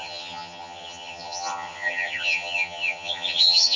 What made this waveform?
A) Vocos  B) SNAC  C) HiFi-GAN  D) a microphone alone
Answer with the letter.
C